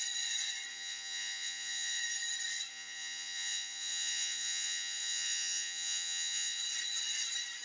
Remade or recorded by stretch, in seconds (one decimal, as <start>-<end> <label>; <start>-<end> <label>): 0.0-0.7 recorded; 0.7-2.0 remade; 2.0-2.7 recorded; 2.7-6.6 remade; 6.6-7.6 recorded